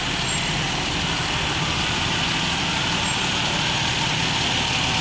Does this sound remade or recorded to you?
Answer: recorded